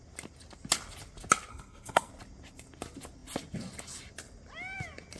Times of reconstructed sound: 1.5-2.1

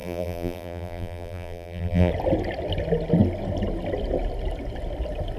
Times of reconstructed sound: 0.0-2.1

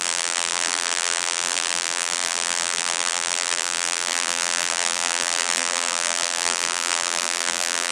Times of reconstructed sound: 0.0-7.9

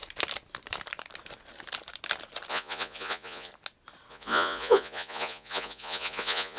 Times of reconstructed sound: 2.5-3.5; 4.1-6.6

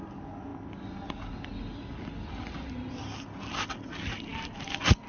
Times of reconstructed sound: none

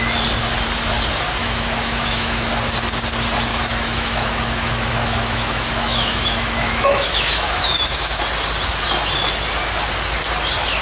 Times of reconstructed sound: 1.4-2.5; 3.5-8.2

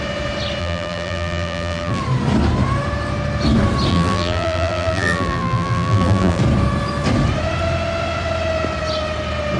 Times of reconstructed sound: 0.6-2.0; 3.9-6.4